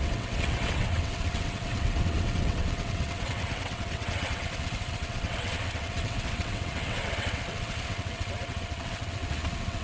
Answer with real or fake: fake